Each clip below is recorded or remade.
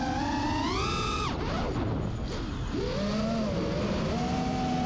recorded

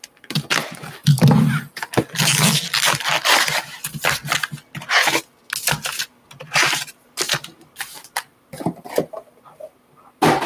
recorded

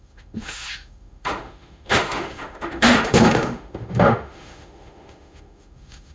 remade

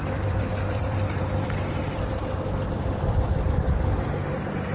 remade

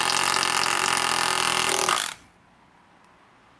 recorded